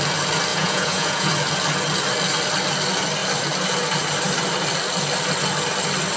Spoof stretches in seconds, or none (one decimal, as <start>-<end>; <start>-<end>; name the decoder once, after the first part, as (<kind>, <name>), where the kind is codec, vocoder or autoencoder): 0.5-1.3 (vocoder, Vocos)

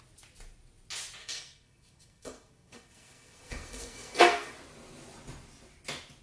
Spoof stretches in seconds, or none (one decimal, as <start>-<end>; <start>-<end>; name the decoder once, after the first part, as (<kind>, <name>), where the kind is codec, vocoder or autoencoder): 1.2-4.5 (codec, SNAC)

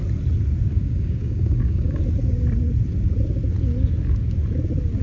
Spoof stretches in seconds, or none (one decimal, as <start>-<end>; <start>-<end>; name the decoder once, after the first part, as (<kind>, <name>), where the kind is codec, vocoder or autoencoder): 0.7-2.0 (codec, DAC)

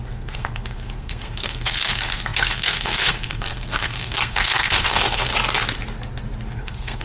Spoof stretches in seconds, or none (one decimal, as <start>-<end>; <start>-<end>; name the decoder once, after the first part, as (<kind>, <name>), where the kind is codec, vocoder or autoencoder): 0.0-5.3 (codec, SNAC); 6.5-7.0

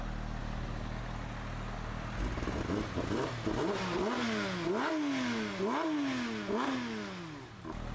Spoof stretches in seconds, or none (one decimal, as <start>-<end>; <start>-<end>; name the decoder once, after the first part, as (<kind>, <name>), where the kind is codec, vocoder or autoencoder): none

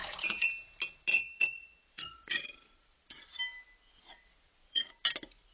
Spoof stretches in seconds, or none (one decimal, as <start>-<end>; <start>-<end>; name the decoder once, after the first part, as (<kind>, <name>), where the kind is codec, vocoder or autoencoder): 0.0-0.5 (vocoder, Vocos); 1.1-3.4; 3.9-4.9